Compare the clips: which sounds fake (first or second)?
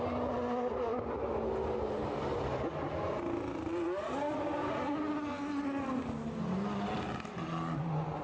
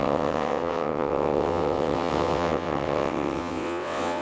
second